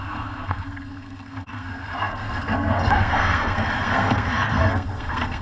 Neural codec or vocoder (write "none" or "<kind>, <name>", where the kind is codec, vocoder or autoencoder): codec, SNAC